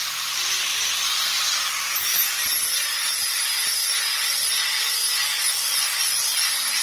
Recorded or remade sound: recorded